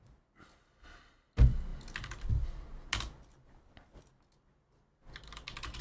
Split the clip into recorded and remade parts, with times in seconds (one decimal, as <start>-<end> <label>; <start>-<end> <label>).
0.0-5.8 recorded